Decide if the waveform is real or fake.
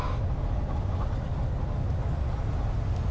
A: real